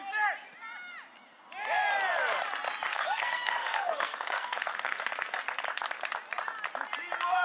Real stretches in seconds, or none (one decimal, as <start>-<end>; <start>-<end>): 0.0-2.9; 5.4-7.4